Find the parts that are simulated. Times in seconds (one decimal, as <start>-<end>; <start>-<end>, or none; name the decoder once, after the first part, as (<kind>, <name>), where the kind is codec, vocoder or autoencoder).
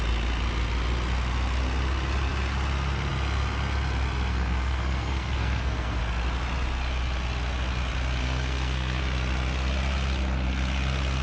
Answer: 4.3-6.0 (codec, SNAC); 8.2-9.0